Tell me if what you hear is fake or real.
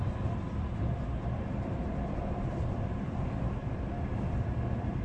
fake